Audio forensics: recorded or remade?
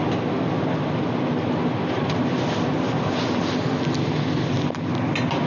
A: recorded